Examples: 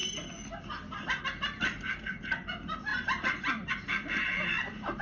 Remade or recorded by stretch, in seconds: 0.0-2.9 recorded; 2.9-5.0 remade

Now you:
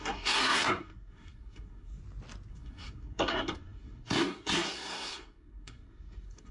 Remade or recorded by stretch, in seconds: 0.0-2.0 remade; 2.0-2.5 recorded; 2.5-6.5 remade

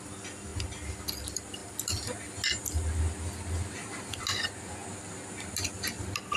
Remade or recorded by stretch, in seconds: 0.0-6.4 recorded

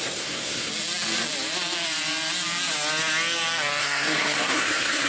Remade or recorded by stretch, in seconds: 0.0-0.7 remade; 0.7-3.8 recorded; 3.8-5.1 remade

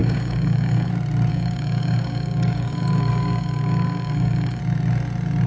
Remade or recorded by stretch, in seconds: 0.0-0.9 remade; 0.9-1.3 recorded; 1.3-4.6 remade; 4.6-5.5 recorded

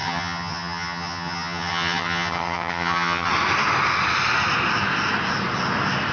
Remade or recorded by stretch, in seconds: 0.0-3.3 remade; 3.3-6.1 recorded